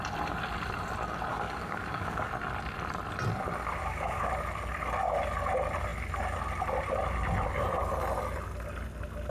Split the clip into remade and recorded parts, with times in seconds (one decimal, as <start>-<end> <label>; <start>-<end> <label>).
0.0-1.3 recorded; 1.3-2.3 remade; 2.3-3.8 recorded; 3.8-4.3 remade; 4.3-9.3 recorded